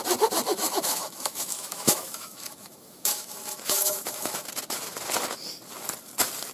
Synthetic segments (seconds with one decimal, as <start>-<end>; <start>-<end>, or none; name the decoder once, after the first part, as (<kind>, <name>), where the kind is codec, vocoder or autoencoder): 0.5-4.4 (autoencoder, DAC-VAE)